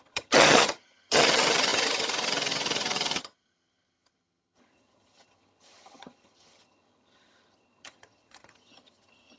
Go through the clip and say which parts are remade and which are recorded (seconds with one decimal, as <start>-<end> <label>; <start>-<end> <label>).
0.0-9.4 remade